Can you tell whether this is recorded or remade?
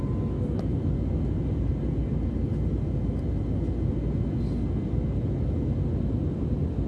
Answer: recorded